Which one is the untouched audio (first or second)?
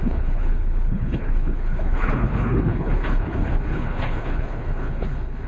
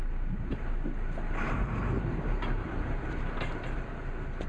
second